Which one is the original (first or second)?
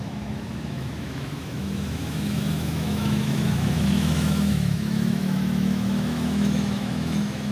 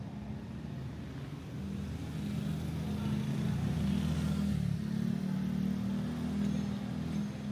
second